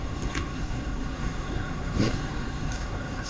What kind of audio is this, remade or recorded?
remade